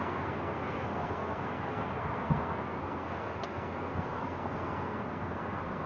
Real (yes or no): no